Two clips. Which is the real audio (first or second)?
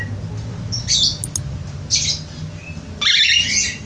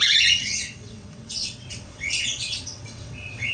first